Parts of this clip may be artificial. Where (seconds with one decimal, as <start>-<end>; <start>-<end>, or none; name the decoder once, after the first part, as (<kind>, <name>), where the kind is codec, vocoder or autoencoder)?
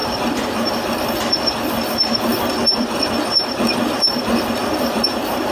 0.0-0.7 (vocoder, BigVGAN v2); 2.3-5.5